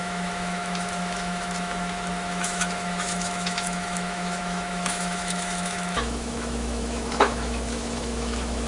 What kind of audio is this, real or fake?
fake